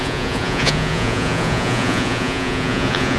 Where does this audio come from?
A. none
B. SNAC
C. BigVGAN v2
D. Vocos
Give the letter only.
D